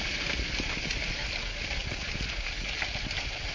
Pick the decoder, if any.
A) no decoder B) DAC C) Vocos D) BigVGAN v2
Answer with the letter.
A